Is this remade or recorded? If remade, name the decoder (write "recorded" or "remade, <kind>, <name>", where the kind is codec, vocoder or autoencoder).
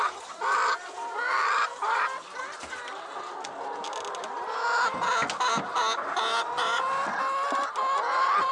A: recorded